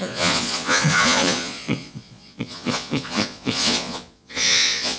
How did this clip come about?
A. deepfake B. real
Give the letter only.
A